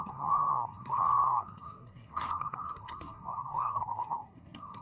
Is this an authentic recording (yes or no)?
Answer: no